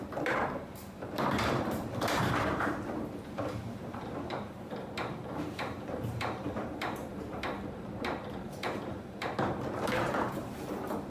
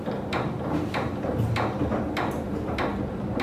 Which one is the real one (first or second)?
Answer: second